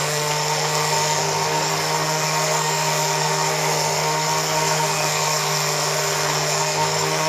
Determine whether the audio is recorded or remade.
remade